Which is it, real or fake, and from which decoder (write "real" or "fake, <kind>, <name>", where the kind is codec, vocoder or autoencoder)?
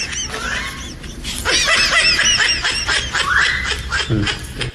real